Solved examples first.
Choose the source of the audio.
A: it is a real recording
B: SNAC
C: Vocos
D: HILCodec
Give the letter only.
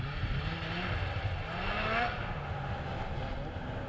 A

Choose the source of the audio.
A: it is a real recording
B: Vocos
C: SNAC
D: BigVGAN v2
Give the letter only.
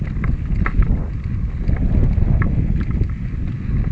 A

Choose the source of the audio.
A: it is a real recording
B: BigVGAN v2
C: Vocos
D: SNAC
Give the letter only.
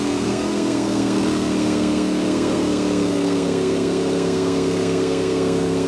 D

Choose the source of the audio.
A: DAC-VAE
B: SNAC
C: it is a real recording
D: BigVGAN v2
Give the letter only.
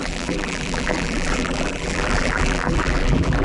D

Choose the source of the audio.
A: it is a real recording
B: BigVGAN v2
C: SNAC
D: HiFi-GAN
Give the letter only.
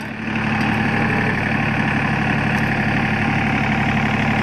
A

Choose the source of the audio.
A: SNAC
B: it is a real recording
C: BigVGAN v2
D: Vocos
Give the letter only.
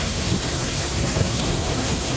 A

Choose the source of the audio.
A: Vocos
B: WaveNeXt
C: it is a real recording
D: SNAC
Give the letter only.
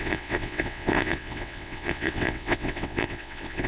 B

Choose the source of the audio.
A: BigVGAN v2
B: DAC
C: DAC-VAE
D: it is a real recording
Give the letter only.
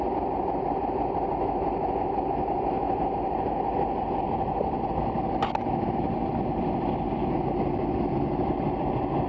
D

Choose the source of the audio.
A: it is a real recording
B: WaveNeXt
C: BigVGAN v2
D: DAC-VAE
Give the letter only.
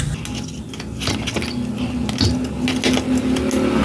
A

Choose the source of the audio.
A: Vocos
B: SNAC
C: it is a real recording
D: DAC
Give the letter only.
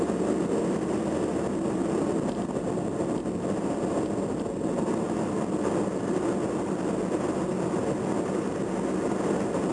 C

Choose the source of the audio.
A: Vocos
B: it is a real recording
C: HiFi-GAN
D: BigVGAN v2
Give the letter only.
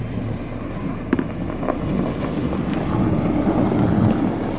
B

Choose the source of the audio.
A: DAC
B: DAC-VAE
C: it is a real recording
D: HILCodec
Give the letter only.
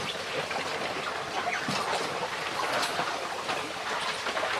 C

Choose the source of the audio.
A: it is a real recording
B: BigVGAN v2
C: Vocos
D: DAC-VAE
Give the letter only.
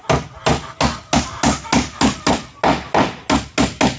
A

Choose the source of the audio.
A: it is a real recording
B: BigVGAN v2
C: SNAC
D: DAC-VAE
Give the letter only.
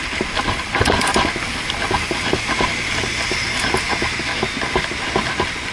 A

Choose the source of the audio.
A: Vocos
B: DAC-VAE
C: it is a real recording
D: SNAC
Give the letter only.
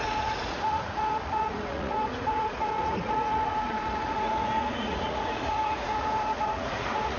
A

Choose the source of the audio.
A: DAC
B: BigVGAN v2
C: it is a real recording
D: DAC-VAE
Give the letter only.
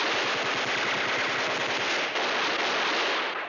C